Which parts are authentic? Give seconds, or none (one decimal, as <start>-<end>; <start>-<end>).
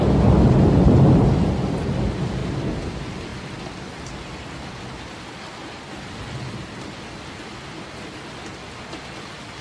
0.0-9.6